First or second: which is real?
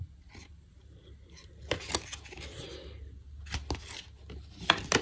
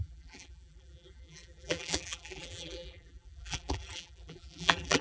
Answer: first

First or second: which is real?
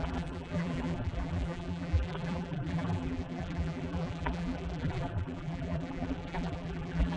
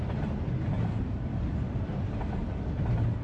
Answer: second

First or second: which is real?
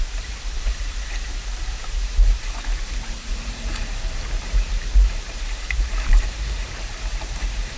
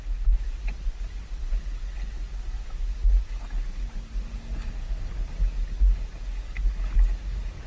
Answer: second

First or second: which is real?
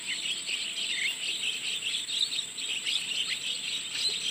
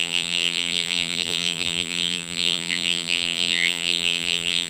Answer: first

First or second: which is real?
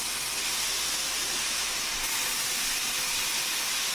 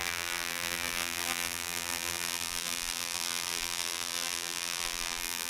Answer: first